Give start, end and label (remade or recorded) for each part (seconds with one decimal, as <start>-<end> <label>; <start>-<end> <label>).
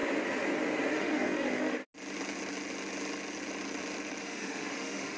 0.0-0.9 recorded; 0.9-1.8 remade; 1.8-4.2 recorded; 4.2-5.2 remade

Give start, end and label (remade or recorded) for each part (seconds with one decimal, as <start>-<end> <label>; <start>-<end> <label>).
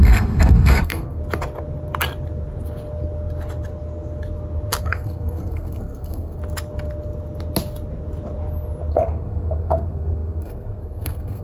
0.0-1.2 remade; 1.2-4.8 recorded; 4.8-6.4 remade; 6.4-8.9 recorded; 8.9-11.4 remade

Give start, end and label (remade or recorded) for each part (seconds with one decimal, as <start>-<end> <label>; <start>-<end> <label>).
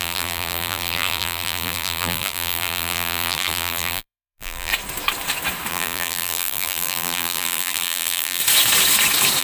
0.0-4.7 remade; 4.7-5.7 recorded; 5.7-8.4 remade; 8.4-9.4 recorded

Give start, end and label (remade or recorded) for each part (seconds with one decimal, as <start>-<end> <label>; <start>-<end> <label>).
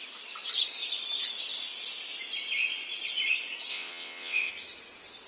0.0-3.7 recorded; 3.7-4.5 remade; 4.5-5.3 recorded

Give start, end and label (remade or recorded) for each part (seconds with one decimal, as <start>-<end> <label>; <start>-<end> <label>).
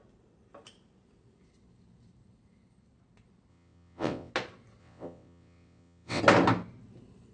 0.0-3.5 recorded; 3.5-4.3 remade; 4.3-4.8 recorded; 4.8-6.2 remade; 6.2-7.3 recorded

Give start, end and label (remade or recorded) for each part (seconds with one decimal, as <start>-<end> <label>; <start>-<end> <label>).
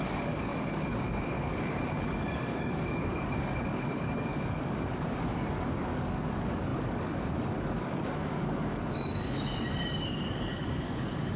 0.0-11.4 remade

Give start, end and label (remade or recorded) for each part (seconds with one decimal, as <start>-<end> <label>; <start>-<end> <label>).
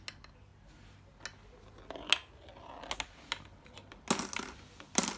0.0-5.2 recorded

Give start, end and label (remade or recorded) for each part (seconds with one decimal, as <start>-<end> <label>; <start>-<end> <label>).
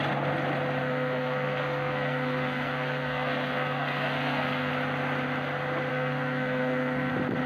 0.0-0.8 recorded; 0.8-4.7 remade; 4.7-5.9 recorded; 5.9-7.1 remade; 7.1-7.5 recorded